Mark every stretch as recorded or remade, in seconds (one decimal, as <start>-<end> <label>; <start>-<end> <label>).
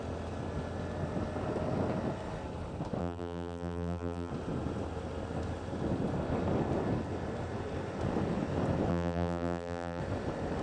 0.0-3.0 recorded; 3.0-4.3 remade; 4.3-8.9 recorded; 8.9-10.0 remade; 10.0-10.6 recorded